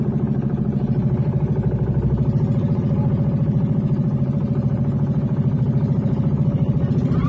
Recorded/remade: remade